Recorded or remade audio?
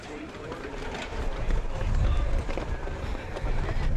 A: remade